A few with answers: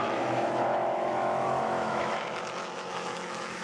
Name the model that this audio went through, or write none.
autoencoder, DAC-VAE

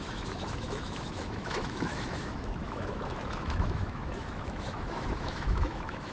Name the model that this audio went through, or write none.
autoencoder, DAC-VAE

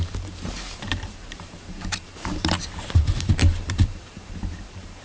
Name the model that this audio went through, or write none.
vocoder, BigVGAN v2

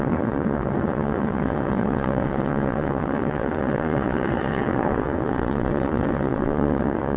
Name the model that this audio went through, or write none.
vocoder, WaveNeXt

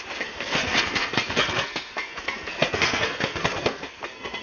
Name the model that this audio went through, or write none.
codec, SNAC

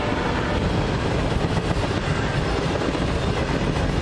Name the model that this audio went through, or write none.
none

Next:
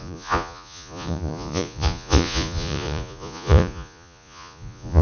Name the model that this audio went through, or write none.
vocoder, Vocos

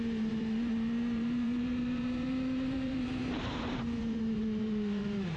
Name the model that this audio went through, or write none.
vocoder, BigVGAN v2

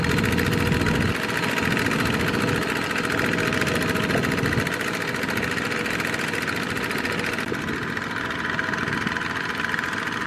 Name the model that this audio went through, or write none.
none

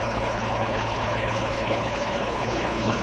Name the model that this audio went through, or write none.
codec, HILCodec